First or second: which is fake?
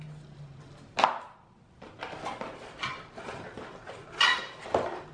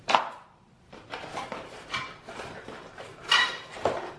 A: second